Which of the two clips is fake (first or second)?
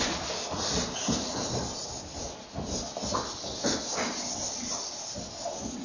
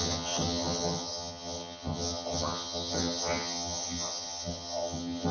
second